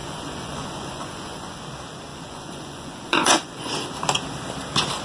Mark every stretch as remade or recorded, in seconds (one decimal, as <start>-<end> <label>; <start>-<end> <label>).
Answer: 0.0-1.6 remade; 1.6-2.1 recorded; 2.1-3.7 remade; 3.7-5.0 recorded